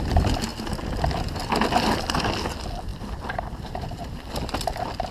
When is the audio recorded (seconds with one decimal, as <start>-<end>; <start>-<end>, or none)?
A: 0.0-2.9; 4.3-5.1